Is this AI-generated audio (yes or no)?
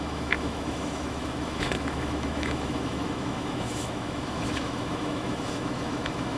yes